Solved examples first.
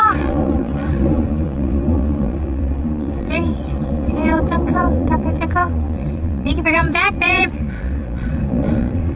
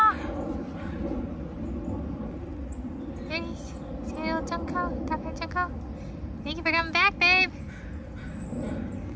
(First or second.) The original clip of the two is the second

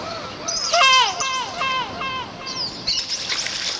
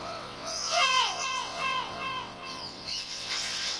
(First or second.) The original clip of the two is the first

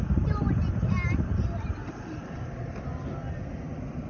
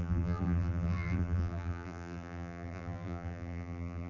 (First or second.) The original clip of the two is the first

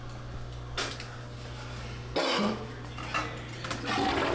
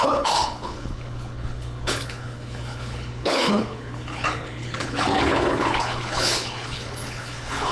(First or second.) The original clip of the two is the first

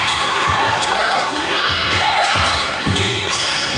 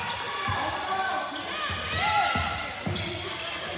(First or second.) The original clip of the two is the second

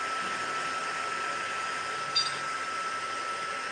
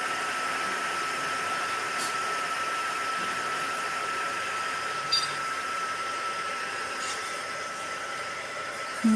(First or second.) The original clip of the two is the first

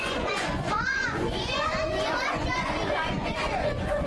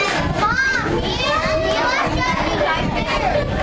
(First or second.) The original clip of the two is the second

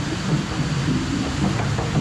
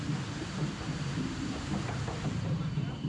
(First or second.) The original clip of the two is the first